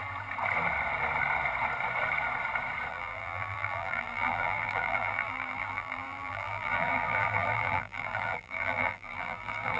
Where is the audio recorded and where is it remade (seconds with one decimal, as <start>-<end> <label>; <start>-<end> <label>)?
0.0-2.9 recorded; 2.9-9.8 remade